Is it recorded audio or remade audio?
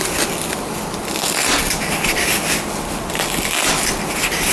recorded